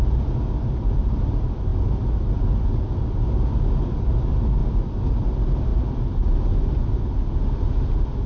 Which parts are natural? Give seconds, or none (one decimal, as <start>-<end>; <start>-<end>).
0.0-8.3

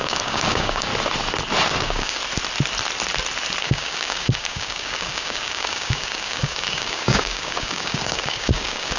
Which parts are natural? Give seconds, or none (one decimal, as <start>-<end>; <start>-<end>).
0.9-1.8; 2.2-3.6

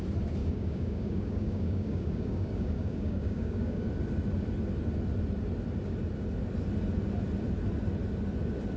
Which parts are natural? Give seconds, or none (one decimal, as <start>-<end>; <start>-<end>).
0.0-0.4; 3.9-8.8

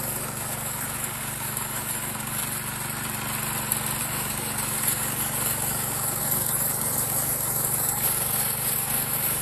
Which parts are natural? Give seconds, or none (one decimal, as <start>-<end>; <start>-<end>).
2.4-4.0

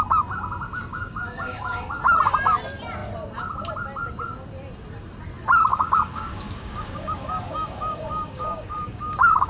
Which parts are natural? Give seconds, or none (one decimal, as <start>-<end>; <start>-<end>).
0.0-0.9; 2.0-5.7

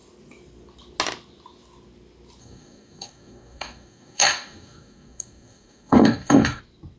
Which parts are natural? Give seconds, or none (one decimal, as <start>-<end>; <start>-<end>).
0.0-2.4; 6.6-7.0

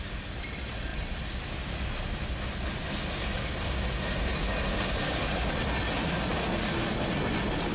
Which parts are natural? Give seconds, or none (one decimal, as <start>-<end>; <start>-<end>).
0.0-7.7

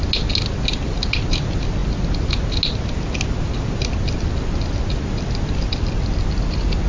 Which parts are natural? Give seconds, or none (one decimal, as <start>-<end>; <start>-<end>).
0.0-6.9